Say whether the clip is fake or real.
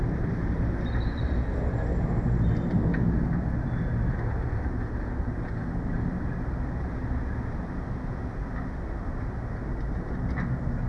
real